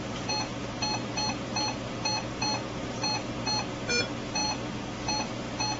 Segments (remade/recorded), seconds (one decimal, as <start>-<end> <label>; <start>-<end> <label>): 0.0-5.8 recorded